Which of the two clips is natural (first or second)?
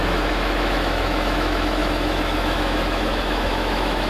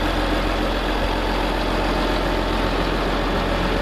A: second